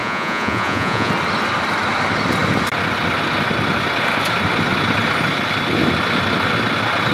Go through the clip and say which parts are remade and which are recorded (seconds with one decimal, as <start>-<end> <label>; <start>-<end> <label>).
0.0-1.1 remade; 1.1-7.1 recorded